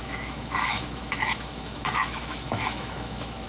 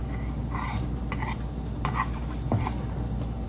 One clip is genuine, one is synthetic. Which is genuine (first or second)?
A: second